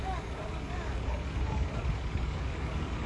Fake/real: fake